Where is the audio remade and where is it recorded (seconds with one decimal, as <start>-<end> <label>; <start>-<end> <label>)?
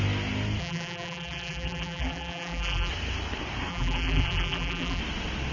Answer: 0.0-0.6 recorded; 0.6-2.9 remade; 2.9-3.7 recorded; 3.7-5.0 remade; 5.0-5.5 recorded